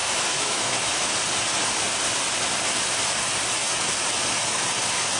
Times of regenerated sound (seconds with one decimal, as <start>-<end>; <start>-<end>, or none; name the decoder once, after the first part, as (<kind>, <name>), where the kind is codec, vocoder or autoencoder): 0.0-1.1 (autoencoder, DAC-VAE)